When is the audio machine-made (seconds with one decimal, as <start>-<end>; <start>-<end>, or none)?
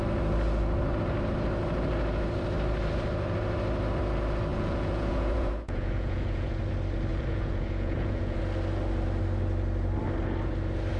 4.5-6.6; 7.1-8.4